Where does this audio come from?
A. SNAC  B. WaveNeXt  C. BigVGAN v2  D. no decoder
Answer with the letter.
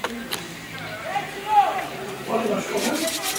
D